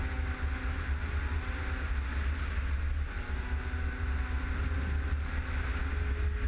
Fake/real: real